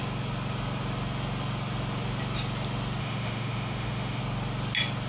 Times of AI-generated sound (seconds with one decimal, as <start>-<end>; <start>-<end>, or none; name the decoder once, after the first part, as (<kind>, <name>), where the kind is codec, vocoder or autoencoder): 3.0-4.2 (autoencoder, DAC-VAE)